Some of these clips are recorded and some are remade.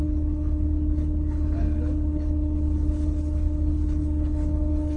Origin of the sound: remade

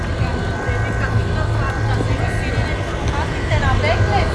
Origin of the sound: recorded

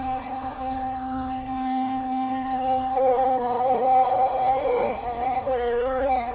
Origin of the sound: remade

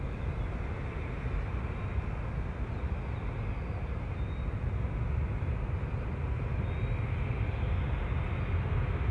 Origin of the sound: recorded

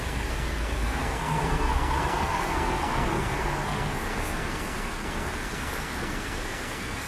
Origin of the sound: remade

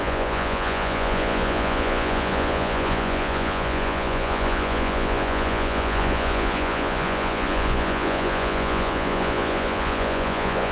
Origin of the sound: remade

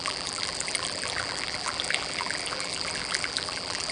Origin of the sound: remade